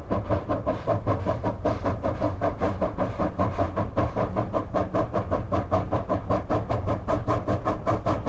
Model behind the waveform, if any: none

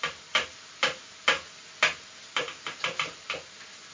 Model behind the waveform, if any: none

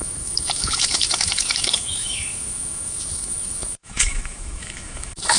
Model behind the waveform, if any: autoencoder, DAC-VAE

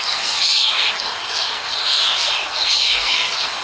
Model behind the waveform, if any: codec, SNAC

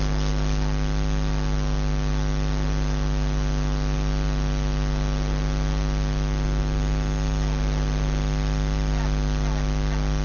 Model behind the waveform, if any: none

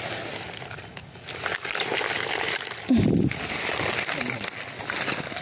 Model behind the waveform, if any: none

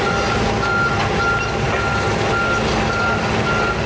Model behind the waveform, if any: none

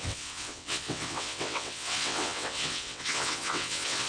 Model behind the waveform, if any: vocoder, WaveNeXt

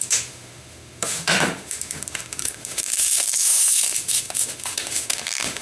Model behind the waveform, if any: autoencoder, DAC-VAE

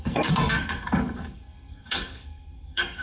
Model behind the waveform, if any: codec, SNAC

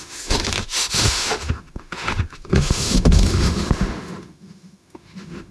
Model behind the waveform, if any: autoencoder, DAC-VAE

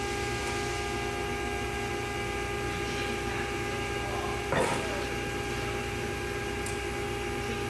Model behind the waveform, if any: none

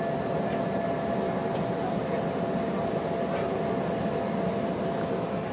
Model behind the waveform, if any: none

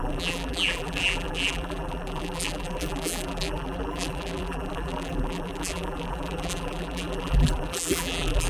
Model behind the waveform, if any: vocoder, BigVGAN v2